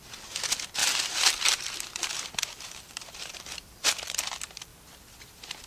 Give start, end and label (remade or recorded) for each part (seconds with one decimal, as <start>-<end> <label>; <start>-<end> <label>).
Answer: 0.0-0.8 recorded; 0.8-4.2 remade; 4.2-5.7 recorded